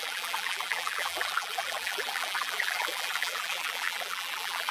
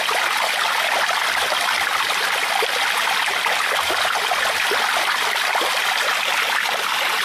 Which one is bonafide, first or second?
second